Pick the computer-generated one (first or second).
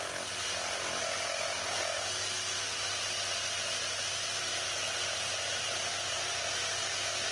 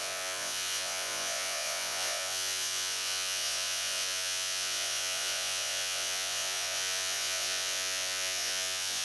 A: second